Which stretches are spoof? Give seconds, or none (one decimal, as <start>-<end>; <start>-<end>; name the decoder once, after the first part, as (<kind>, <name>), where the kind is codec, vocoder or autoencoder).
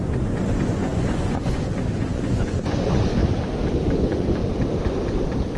0.0-3.2 (vocoder, Vocos); 4.0-4.4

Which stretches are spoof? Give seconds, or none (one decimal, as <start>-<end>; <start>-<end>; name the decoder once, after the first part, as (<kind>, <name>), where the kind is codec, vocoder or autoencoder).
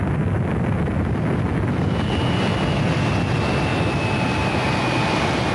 none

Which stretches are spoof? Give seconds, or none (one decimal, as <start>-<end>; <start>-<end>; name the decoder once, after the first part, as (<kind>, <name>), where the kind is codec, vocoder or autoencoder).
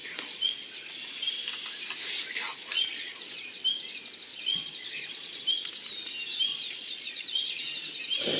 0.0-0.5 (vocoder, Vocos); 2.6-3.6; 4.3-5.4; 6.5-7.6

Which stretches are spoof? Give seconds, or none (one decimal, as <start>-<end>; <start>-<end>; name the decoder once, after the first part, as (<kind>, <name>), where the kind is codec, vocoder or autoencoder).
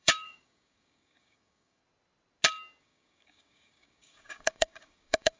0.0-1.8 (codec, DAC); 2.8-5.4